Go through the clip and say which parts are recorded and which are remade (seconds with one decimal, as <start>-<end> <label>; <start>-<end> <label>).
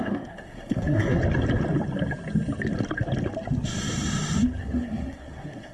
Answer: 0.0-1.2 remade; 1.2-4.6 recorded; 4.6-5.7 remade